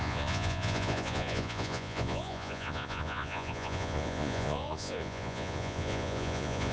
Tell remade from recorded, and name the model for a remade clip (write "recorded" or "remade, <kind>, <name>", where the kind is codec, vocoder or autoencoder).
remade, vocoder, Vocos